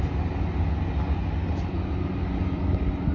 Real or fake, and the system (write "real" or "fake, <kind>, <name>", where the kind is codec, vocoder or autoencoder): real